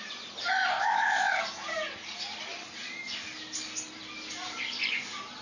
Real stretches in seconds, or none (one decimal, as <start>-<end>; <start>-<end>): 0.0-0.7; 1.4-5.4